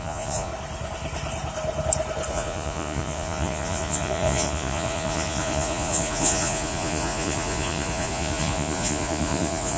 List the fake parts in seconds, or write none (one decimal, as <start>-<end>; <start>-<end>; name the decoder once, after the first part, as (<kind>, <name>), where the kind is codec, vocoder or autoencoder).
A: 0.0-0.5 (vocoder, Vocos); 2.3-9.8